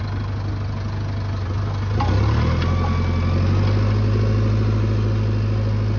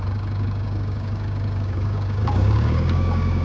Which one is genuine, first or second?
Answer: first